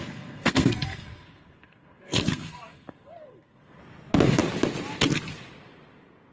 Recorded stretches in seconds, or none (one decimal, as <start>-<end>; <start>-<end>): 3.8-6.3